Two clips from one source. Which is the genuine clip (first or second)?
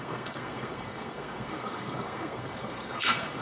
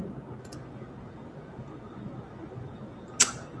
second